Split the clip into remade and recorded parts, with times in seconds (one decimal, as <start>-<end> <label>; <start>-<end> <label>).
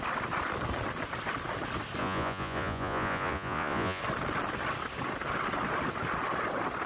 0.0-2.0 recorded; 2.0-4.0 remade; 4.0-6.9 recorded